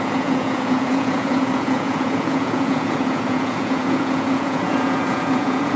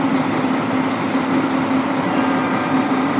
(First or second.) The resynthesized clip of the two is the first